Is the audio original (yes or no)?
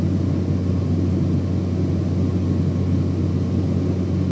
yes